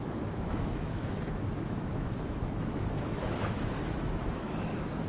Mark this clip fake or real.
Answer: fake